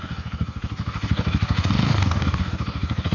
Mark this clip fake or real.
fake